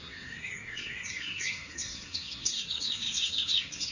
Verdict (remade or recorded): remade